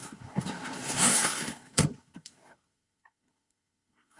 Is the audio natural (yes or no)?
no